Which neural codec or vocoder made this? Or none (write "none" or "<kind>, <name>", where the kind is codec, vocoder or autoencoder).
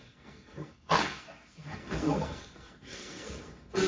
codec, SNAC